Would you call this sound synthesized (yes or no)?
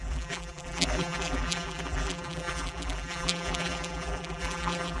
yes